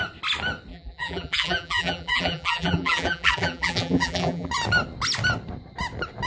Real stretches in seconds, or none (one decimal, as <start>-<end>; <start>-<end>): 0.0-0.7; 4.5-6.3